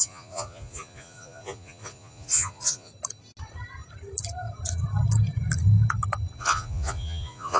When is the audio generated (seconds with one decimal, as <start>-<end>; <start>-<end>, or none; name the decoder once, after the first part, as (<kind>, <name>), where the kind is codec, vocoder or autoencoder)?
0.0-2.9 (vocoder, Vocos); 6.4-7.6